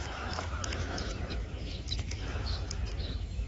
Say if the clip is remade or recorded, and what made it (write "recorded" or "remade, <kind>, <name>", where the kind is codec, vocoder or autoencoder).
remade, autoencoder, DAC-VAE